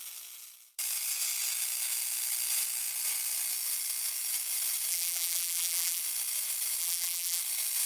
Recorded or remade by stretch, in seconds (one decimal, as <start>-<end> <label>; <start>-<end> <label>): 0.0-4.9 recorded; 4.9-6.0 remade; 6.0-6.8 recorded; 6.8-7.4 remade; 7.4-7.9 recorded